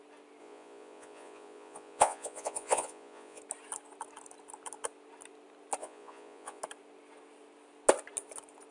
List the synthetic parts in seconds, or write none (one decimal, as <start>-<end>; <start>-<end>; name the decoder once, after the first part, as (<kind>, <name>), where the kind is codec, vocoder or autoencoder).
0.4-3.4 (vocoder, Vocos); 5.8-6.6